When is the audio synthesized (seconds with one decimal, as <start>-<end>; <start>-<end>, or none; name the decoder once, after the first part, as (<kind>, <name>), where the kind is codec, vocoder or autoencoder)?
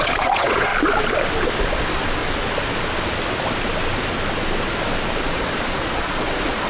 0.0-0.7 (vocoder, Vocos); 1.6-2.2; 5.2-6.7